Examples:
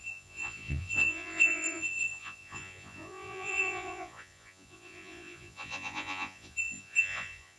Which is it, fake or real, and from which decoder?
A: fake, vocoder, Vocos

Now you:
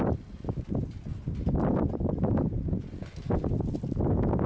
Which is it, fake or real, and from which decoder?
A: real